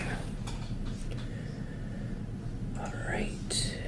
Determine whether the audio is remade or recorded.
recorded